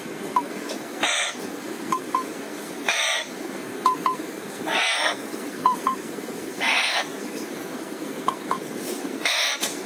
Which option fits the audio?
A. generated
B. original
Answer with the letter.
A